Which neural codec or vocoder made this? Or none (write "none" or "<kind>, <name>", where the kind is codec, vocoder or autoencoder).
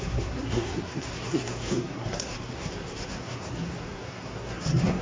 codec, SNAC